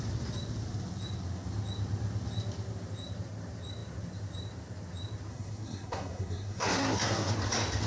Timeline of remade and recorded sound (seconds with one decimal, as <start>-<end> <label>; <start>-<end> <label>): 0.0-5.3 recorded; 5.3-7.3 remade; 7.3-7.9 recorded